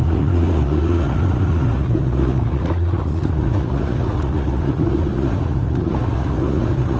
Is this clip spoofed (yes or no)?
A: yes